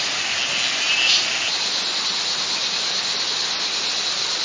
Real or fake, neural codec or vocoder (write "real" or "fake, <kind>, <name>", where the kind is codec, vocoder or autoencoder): real